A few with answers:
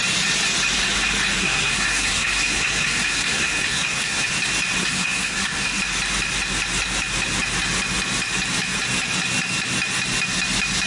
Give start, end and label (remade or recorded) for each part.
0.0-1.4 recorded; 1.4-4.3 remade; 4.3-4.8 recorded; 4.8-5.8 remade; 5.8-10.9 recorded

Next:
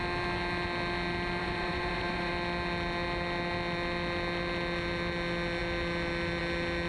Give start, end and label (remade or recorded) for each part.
0.0-1.4 recorded; 1.4-2.3 remade; 2.3-6.9 recorded